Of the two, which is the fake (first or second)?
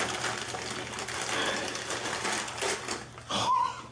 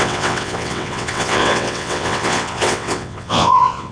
second